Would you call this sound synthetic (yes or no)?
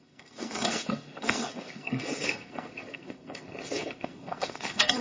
yes